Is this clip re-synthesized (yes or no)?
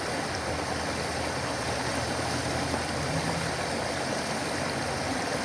no